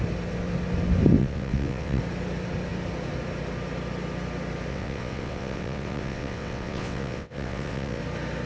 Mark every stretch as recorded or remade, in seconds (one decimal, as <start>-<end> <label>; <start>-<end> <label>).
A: 0.0-1.2 recorded; 1.2-2.0 remade; 2.0-4.7 recorded; 4.7-8.0 remade; 8.0-8.5 recorded